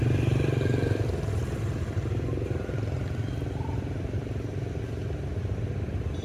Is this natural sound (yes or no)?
yes